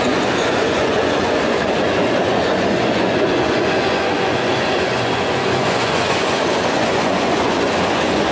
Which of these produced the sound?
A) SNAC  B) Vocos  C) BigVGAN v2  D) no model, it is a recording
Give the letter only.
B